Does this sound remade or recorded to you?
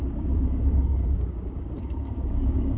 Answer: remade